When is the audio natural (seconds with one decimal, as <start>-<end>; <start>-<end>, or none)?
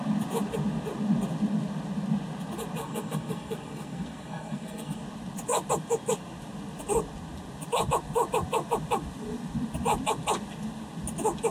0.0-2.8; 5.0-11.5